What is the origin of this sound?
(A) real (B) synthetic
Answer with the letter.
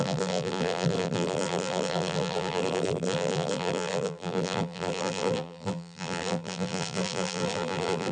B